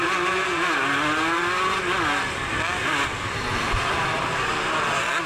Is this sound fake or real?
real